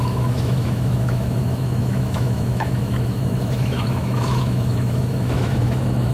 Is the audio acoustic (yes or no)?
no